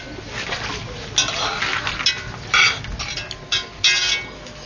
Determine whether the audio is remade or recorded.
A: recorded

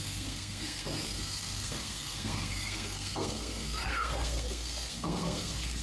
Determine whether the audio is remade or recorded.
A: remade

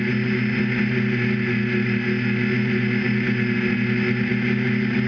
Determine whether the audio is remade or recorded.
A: recorded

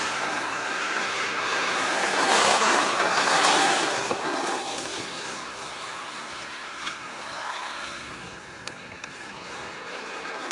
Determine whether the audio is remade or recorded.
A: remade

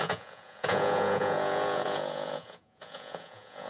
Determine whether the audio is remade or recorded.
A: remade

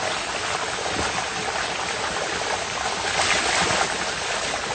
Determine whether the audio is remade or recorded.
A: recorded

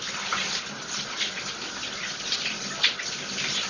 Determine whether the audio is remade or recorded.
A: recorded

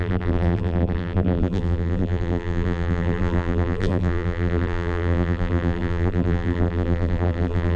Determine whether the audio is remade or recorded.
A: remade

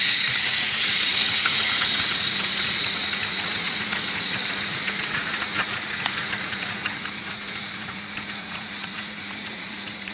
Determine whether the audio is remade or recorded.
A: remade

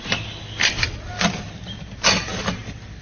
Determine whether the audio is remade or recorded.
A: remade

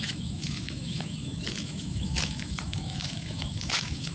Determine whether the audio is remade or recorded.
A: remade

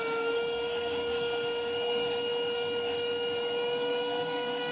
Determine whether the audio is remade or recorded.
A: remade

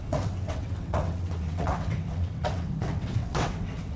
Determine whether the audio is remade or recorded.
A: remade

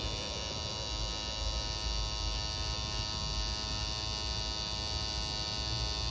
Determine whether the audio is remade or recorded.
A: recorded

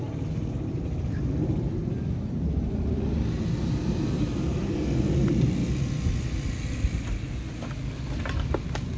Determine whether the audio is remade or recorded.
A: recorded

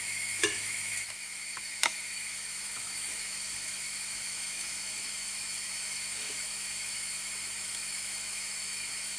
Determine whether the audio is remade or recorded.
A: remade